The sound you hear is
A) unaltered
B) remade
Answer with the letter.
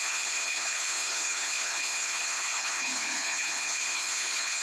B